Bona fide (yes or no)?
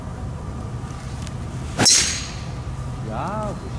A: yes